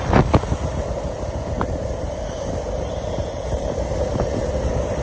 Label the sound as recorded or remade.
recorded